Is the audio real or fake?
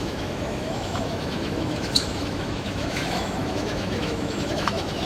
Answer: fake